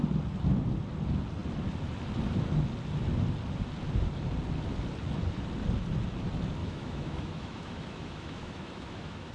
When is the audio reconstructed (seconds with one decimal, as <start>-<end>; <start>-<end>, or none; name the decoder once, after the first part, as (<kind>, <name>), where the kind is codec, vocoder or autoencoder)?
6.6-9.3 (autoencoder, DAC-VAE)